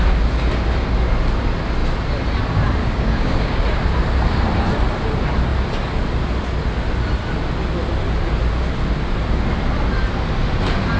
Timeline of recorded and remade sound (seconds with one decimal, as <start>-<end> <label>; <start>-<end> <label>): 0.0-2.8 recorded; 2.8-3.6 remade; 3.6-11.0 recorded